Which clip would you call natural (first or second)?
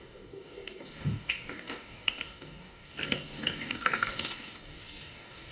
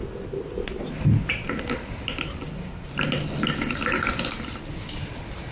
second